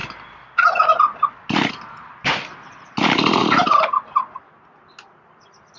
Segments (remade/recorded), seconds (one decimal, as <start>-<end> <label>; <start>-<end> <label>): 0.0-5.8 recorded